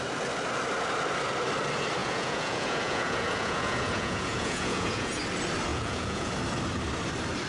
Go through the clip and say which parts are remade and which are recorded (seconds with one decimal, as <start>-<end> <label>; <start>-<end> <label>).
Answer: 0.0-2.0 recorded; 2.0-5.2 remade; 5.2-5.7 recorded; 5.7-6.3 remade; 6.3-7.5 recorded